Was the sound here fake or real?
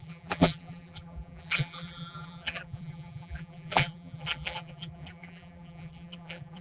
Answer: fake